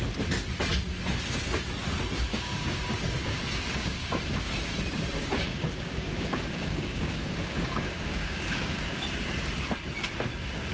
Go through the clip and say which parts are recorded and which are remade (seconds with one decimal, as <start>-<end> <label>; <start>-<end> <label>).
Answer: 0.0-2.3 recorded; 2.3-4.2 remade; 4.2-5.2 recorded; 5.2-9.0 remade; 9.0-10.7 recorded